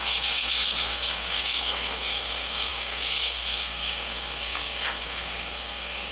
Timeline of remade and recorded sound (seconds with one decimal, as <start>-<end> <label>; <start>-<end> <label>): 0.0-6.1 remade